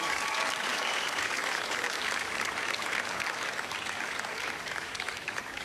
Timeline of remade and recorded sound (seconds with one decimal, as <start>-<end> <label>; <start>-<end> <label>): 0.0-5.6 remade